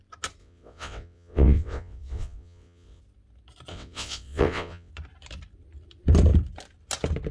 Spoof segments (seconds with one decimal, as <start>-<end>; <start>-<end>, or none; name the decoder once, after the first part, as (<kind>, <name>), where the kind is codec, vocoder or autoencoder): 0.4-3.0 (vocoder, WaveNeXt); 3.7-4.9